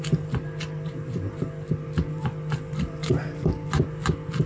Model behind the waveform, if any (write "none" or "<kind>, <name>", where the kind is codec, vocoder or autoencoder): none